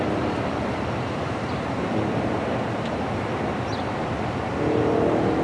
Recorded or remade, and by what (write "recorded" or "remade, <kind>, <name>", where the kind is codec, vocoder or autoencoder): remade, vocoder, BigVGAN v2